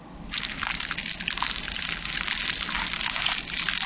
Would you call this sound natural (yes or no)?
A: yes